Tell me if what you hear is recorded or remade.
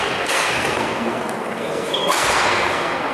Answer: remade